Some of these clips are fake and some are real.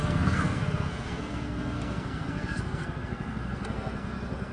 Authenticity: fake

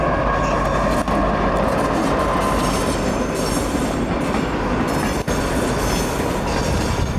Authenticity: real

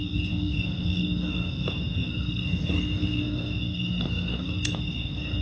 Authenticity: fake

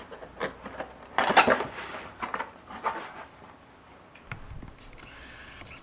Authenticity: real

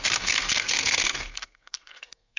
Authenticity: fake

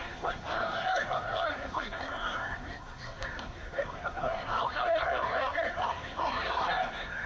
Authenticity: fake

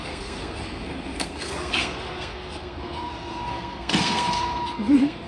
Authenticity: fake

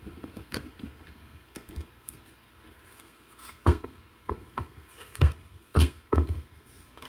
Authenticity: fake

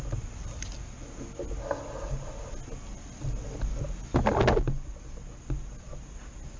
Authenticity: real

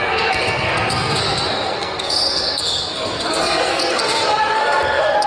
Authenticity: fake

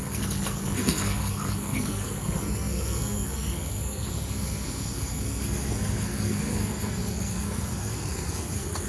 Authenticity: fake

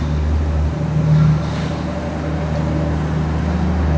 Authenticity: real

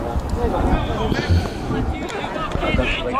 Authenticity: real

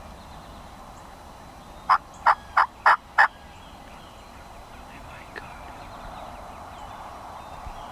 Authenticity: real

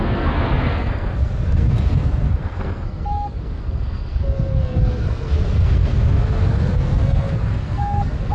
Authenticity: fake